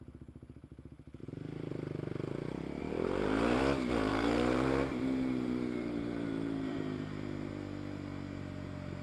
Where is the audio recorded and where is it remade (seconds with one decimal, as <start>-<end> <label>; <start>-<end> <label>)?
0.0-1.2 recorded; 1.2-1.7 remade; 1.7-2.8 recorded; 2.8-3.6 remade; 3.6-4.1 recorded; 4.1-7.5 remade; 7.5-9.0 recorded